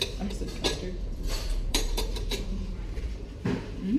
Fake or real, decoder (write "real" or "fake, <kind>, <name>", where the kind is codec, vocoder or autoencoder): fake, vocoder, BigVGAN v2